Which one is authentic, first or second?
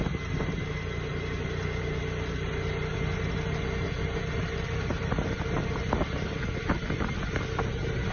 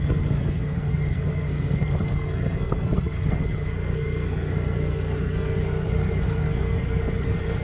first